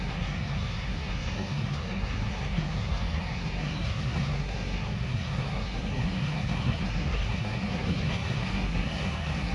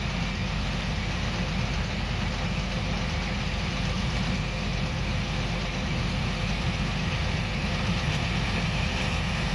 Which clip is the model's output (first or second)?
first